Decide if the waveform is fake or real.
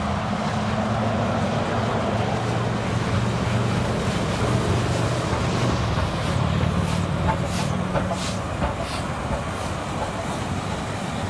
real